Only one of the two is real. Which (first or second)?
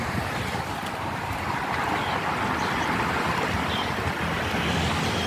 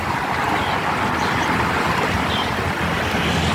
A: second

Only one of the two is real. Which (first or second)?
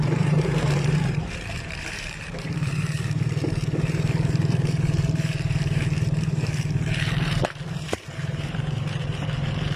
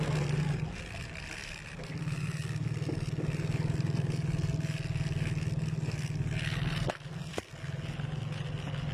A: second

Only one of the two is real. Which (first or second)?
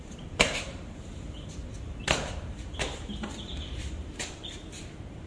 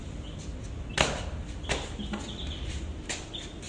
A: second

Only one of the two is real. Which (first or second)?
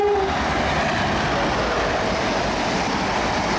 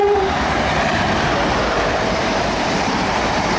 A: first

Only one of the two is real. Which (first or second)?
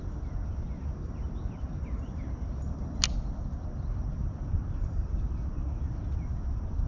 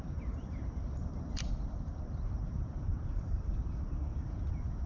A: first